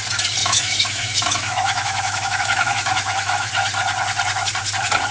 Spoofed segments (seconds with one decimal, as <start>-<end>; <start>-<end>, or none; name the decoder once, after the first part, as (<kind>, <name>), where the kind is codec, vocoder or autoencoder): 0.4-3.5 (autoencoder, DAC-VAE)